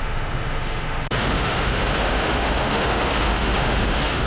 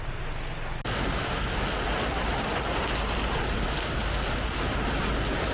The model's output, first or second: first